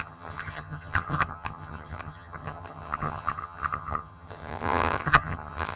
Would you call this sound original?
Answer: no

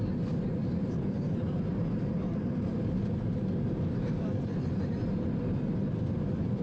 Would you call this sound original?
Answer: yes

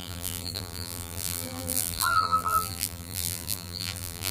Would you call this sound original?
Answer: no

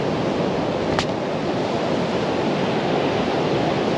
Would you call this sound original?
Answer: yes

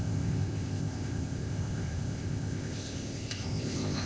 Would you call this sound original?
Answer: no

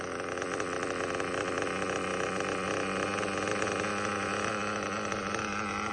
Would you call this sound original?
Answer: yes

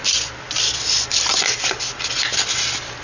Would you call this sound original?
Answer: yes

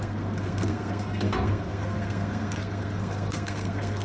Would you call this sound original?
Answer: no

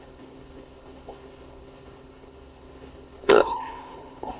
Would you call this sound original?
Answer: no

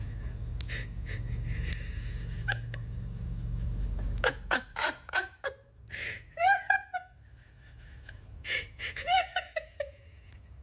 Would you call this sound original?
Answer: yes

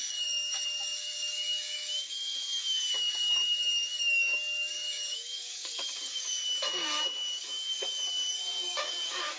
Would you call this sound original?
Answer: no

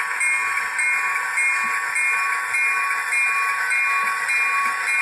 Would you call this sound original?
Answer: yes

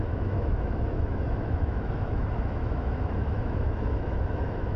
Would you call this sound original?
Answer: no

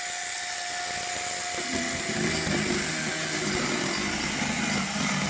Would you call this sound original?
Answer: yes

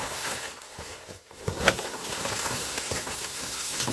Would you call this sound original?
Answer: no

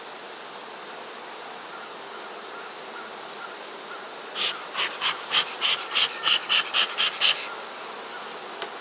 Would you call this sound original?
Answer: yes